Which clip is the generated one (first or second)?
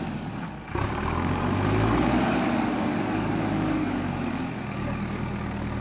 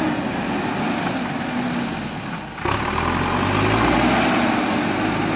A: first